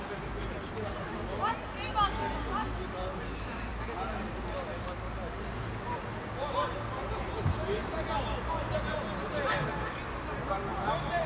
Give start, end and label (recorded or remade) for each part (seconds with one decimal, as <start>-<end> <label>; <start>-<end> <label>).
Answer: 0.0-11.3 recorded